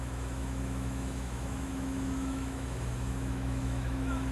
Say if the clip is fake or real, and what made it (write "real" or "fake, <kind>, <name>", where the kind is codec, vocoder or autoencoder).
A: fake, autoencoder, DAC-VAE